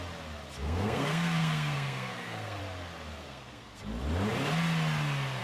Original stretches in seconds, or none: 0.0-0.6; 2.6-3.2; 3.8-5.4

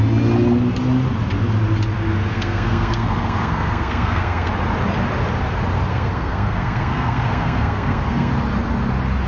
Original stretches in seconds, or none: 0.0-2.3; 4.5-5.9; 8.3-9.3

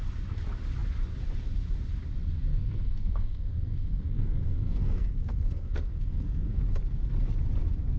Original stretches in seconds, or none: 0.0-2.5; 6.6-8.0